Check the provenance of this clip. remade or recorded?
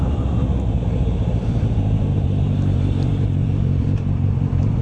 remade